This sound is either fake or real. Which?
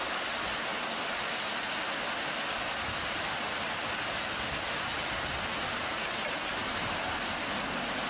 real